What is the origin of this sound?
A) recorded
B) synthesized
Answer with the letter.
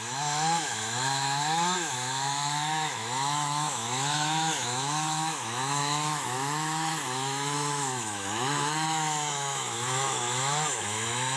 B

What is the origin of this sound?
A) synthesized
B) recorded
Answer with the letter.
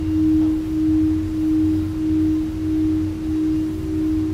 B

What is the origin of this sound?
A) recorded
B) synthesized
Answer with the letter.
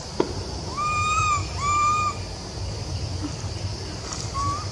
A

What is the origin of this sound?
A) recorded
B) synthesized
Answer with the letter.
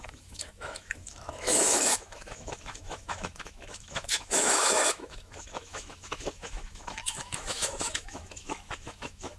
B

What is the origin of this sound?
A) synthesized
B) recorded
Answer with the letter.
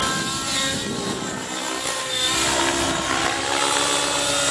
B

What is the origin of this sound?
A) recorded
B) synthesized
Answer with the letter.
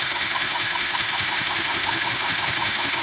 B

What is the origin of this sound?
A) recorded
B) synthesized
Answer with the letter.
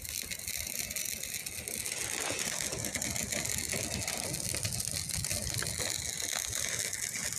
A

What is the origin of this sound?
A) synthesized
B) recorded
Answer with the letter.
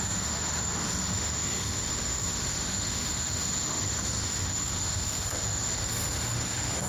A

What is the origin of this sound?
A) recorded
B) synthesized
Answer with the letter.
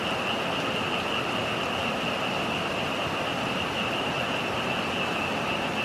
A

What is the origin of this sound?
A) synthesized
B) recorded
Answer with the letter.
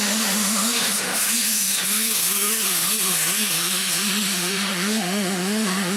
A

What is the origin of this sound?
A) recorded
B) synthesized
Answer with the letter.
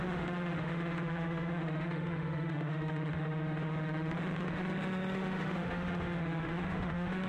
B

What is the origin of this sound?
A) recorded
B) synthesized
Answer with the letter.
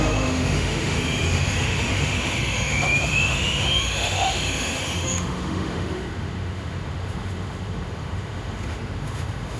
B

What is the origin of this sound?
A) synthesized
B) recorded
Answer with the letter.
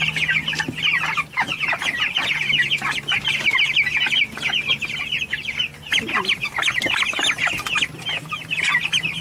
B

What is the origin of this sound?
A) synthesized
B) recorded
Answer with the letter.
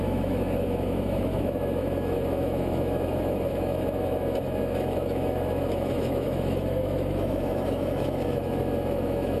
A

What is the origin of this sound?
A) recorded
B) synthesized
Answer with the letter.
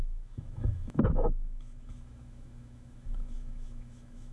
B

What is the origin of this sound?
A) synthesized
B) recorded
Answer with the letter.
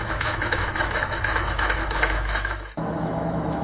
A